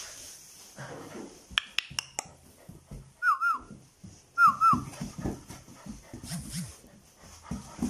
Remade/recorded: recorded